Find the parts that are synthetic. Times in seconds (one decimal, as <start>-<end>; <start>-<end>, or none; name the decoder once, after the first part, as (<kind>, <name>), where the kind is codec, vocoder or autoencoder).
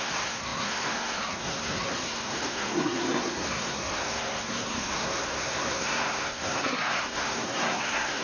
0.0-8.2 (codec, SNAC)